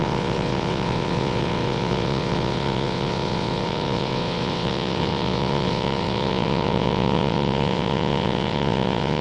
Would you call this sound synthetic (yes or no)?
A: yes